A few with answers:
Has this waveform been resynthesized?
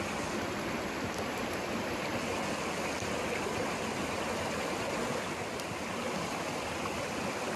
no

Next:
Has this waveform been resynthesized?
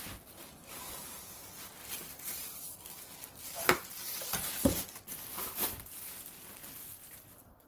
no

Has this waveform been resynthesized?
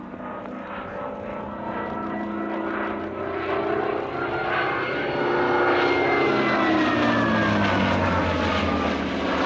no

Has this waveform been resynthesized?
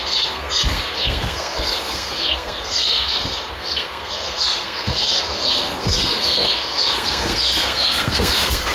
yes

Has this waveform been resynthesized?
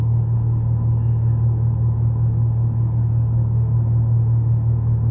no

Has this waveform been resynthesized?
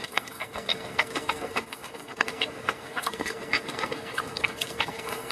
yes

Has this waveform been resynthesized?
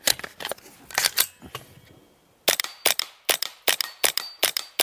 no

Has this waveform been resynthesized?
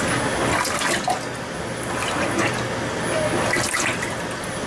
no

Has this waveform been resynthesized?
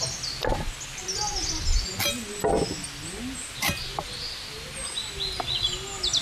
no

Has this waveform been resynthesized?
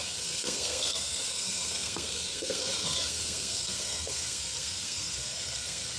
yes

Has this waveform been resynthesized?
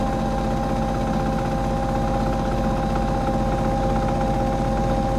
no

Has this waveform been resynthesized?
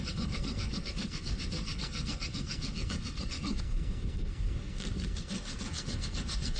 yes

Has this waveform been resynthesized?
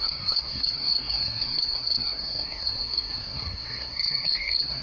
yes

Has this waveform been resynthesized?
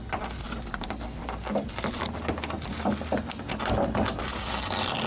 no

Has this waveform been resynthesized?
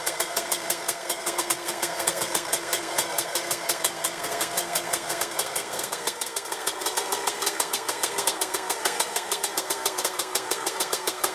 yes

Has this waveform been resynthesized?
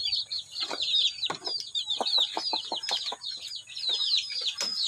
no